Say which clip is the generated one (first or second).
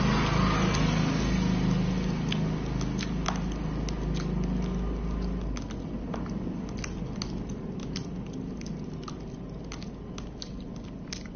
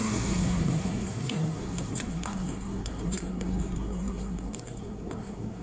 second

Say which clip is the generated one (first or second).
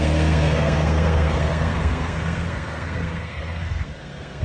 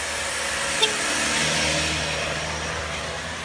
first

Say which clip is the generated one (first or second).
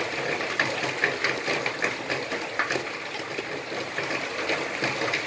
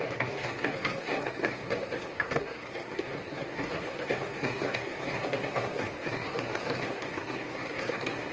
second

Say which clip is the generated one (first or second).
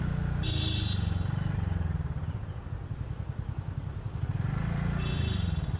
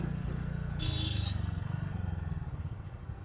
second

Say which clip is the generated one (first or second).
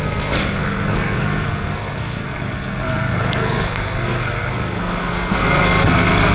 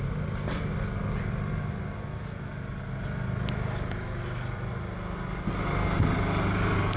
first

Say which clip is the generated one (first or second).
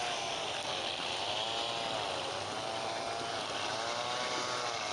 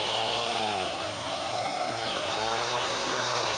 second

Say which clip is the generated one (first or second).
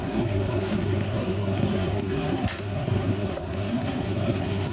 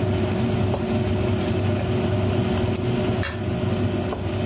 first